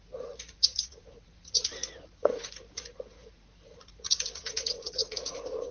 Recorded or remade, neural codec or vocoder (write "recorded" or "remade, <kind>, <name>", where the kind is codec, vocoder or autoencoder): remade, vocoder, Vocos